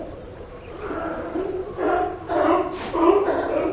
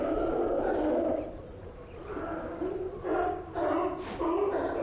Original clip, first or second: second